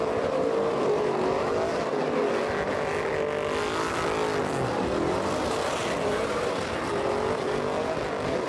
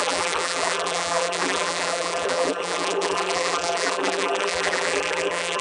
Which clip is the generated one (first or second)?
second